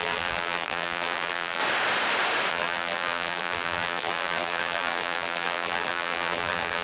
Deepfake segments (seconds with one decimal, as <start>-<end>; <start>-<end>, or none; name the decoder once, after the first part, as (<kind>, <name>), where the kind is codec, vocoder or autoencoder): 0.0-1.6 (vocoder, BigVGAN v2); 2.5-6.8

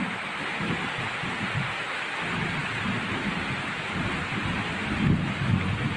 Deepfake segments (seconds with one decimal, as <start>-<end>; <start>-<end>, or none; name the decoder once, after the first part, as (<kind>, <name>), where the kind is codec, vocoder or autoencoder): none

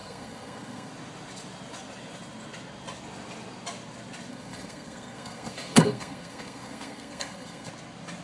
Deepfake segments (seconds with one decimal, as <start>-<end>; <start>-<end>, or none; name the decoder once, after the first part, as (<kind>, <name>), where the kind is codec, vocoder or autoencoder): 0.0-0.9 (codec, SNAC); 4.3-7.7

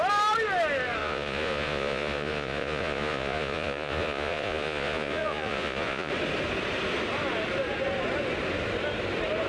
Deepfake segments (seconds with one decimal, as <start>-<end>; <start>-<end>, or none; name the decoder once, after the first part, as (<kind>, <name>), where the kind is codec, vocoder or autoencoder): 1.0-6.1 (vocoder, Vocos)

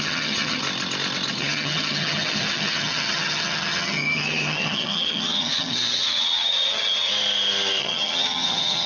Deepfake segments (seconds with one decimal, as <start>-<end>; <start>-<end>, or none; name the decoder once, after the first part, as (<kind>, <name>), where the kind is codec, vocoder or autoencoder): 0.0-0.6 (vocoder, HiFi-GAN); 1.3-7.1; 7.8-8.9

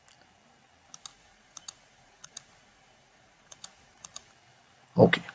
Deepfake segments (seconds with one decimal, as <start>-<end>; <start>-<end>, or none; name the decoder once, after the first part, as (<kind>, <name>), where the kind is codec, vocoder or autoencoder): 1.1-4.3 (vocoder, Vocos)